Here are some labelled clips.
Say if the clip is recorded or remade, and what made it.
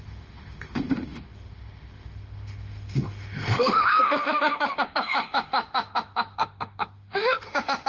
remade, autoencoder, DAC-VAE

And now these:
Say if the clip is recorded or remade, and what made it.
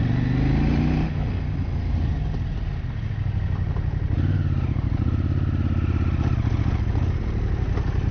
recorded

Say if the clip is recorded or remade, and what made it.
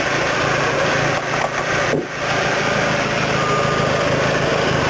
recorded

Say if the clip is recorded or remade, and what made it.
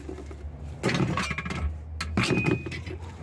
recorded